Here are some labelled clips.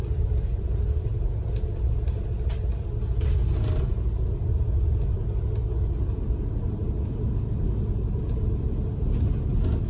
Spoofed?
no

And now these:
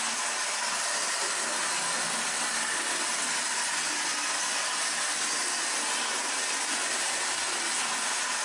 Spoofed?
no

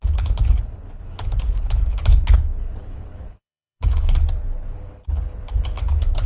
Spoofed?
yes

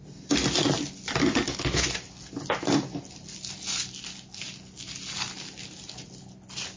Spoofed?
no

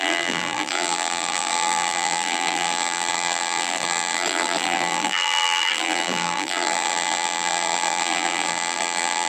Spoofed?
yes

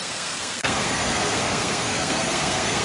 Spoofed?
yes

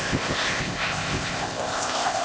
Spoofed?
yes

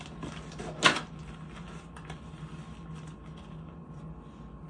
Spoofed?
no